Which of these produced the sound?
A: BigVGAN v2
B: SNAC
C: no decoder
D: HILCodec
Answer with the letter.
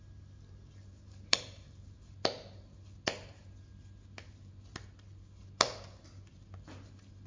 C